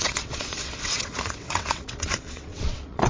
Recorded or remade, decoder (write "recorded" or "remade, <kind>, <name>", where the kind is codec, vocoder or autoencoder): remade, vocoder, WaveNeXt